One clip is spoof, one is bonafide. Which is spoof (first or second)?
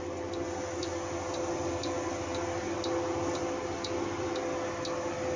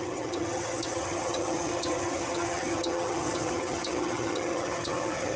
second